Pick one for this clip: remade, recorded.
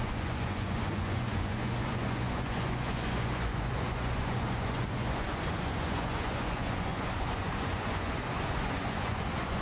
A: remade